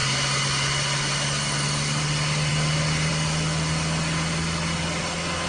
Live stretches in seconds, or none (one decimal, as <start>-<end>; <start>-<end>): 0.0-5.5